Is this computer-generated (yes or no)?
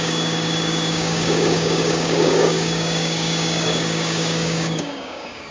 yes